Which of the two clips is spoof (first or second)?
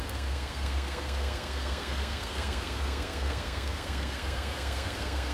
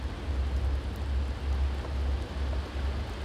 first